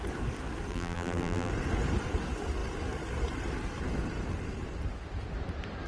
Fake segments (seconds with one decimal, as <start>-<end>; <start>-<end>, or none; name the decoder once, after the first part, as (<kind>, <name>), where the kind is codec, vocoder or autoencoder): 0.7-1.5 (vocoder, BigVGAN v2)